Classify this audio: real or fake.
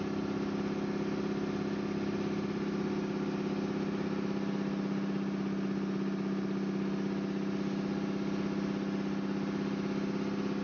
real